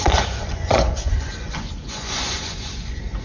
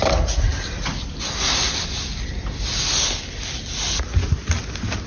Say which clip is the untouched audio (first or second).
second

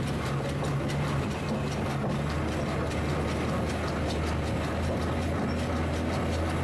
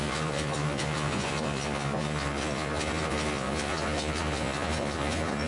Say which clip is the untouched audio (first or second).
first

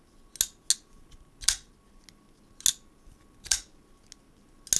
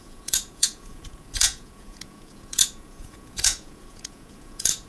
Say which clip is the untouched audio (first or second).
first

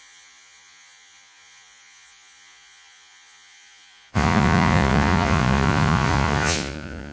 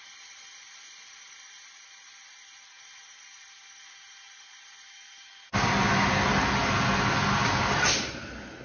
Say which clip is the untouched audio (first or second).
second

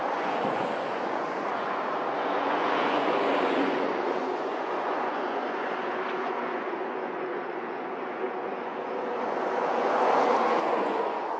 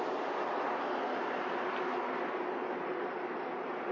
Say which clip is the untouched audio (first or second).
second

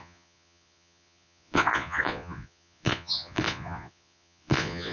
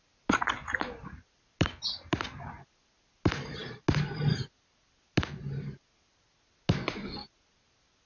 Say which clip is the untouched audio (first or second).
second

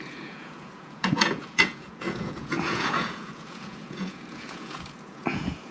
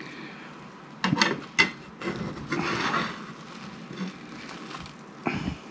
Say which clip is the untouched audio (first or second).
second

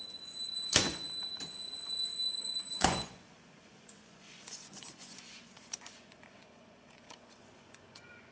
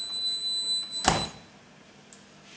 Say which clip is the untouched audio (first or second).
second